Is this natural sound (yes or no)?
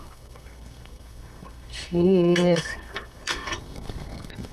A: no